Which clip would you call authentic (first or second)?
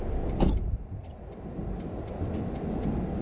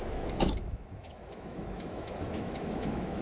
first